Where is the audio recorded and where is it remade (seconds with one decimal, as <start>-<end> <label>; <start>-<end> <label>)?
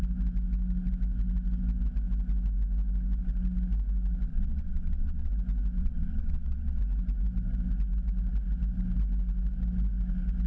0.0-4.3 recorded; 4.3-5.3 remade; 5.3-5.8 recorded; 5.8-6.8 remade; 6.8-10.5 recorded